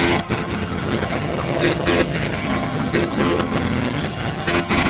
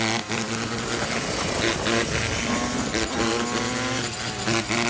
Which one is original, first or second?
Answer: second